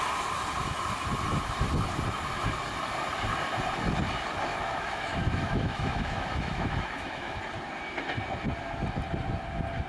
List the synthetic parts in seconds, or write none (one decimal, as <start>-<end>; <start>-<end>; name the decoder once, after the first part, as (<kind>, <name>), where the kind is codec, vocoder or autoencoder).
4.5-7.4 (autoencoder, DAC-VAE)